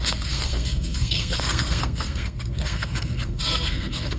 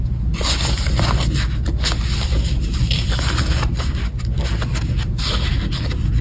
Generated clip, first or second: first